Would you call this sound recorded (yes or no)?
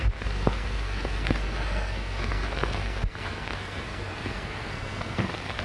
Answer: no